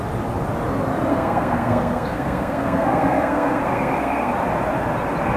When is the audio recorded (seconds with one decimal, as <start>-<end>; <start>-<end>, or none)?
0.0-1.1; 4.3-5.4